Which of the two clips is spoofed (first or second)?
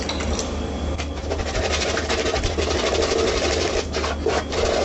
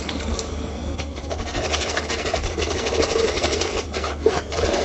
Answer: second